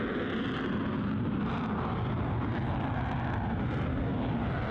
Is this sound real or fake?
real